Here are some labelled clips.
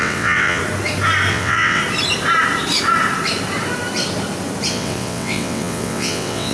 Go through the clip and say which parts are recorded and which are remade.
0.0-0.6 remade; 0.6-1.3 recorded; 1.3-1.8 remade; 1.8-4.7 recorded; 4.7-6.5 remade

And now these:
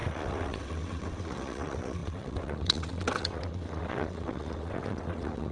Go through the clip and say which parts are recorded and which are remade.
0.0-5.5 remade

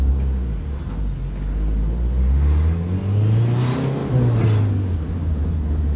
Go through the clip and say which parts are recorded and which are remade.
0.0-6.0 recorded

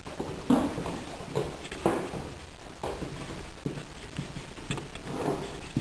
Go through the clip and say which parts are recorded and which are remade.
0.0-5.8 recorded

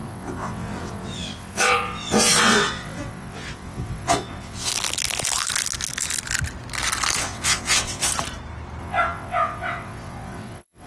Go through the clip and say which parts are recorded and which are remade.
0.0-4.7 remade; 4.7-7.2 recorded; 7.2-8.1 remade; 8.1-8.8 recorded; 8.8-10.9 remade

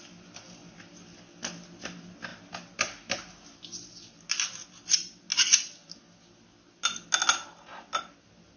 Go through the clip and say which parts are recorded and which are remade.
0.0-8.6 recorded